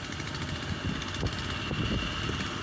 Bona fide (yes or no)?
yes